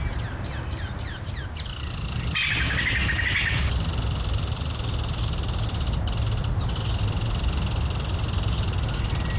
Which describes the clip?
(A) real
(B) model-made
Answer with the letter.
A